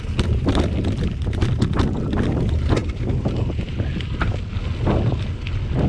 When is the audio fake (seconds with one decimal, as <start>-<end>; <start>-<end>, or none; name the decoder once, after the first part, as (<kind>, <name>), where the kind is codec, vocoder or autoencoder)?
none